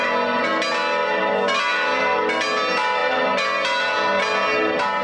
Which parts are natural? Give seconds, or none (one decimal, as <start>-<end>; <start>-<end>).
0.0-5.0

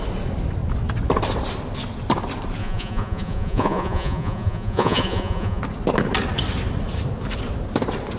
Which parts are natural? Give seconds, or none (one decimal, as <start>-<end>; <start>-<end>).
0.0-2.6; 5.6-8.2

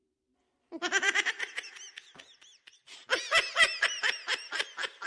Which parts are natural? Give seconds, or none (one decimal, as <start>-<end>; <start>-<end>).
1.3-5.1

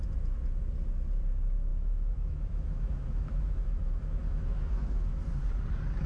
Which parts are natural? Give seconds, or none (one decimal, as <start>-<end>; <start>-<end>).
0.0-1.7; 5.2-6.1

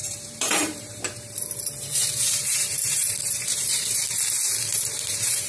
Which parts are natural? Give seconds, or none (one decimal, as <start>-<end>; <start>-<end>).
4.0-4.7

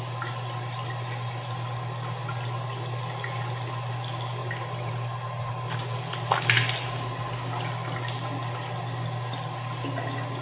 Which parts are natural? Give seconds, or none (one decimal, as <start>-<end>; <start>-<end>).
0.0-10.4

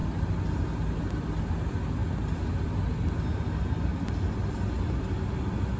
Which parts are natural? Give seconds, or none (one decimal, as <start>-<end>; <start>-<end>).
0.0-5.8

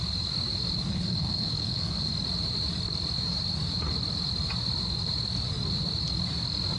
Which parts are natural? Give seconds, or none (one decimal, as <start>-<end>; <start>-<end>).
0.0-0.9; 2.1-6.8